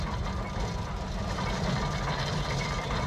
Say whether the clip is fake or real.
real